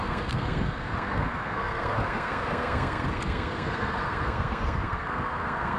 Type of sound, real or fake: fake